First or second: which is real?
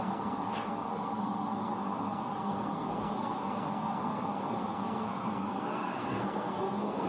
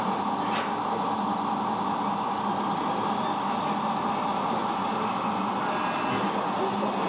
second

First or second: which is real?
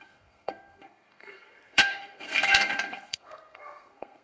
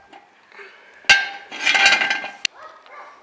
second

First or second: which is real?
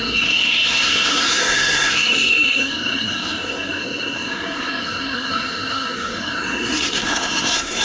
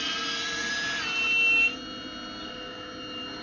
second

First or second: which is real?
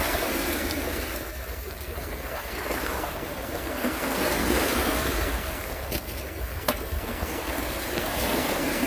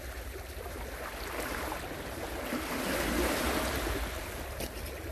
second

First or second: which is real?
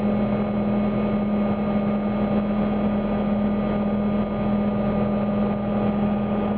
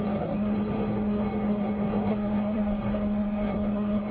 first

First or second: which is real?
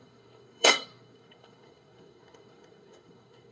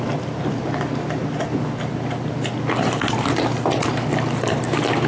second